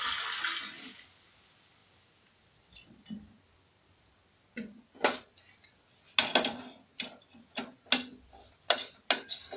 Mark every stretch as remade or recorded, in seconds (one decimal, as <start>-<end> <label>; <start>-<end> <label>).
0.0-9.6 recorded